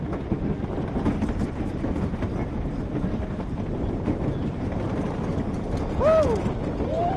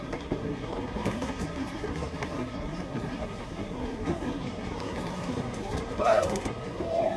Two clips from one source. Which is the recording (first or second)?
first